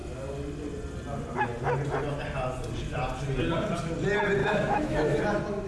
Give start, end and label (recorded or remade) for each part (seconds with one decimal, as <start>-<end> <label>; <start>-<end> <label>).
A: 0.0-4.4 recorded; 4.4-5.2 remade; 5.2-5.7 recorded